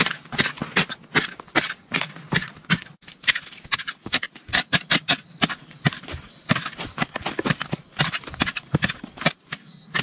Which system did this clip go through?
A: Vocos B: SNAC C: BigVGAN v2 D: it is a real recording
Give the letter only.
D